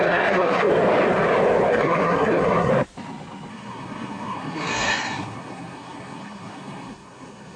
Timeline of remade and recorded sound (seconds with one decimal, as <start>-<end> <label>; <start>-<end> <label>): 0.0-0.7 remade; 0.7-1.7 recorded; 1.7-2.7 remade; 2.7-3.5 recorded; 3.5-7.6 remade